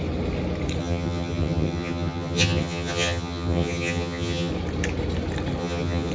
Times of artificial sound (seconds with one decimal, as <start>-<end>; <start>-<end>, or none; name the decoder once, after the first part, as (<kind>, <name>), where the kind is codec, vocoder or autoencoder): 0.8-4.5 (vocoder, HiFi-GAN); 5.6-6.1